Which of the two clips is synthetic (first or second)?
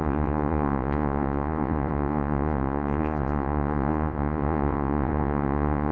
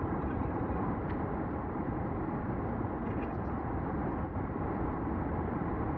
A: first